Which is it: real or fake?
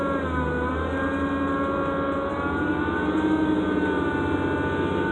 real